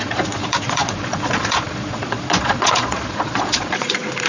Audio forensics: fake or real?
fake